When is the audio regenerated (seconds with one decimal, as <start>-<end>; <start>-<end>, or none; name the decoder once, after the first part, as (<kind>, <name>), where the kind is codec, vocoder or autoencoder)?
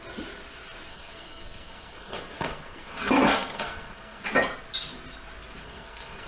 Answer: 0.9-4.2 (codec, SNAC); 5.6-6.3